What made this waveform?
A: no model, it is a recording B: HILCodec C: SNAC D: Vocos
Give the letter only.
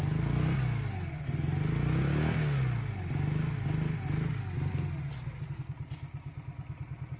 A